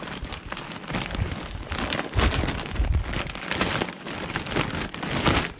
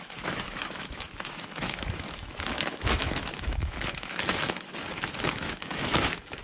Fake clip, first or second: second